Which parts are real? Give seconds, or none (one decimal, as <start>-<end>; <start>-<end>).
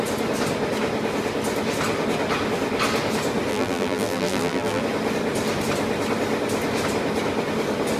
0.0-3.5; 4.8-8.0